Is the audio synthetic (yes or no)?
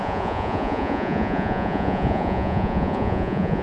yes